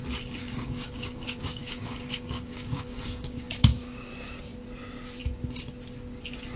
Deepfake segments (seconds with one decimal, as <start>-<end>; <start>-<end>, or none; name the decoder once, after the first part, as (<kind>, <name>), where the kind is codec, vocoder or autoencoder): 0.4-4.1 (codec, DAC)